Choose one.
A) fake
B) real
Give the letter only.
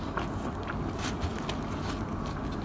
B